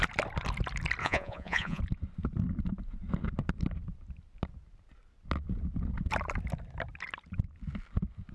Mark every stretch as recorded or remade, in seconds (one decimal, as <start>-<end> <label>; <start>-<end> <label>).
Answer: 0.0-1.0 recorded; 1.0-1.8 remade; 1.8-8.3 recorded